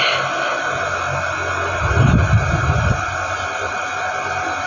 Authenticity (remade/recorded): recorded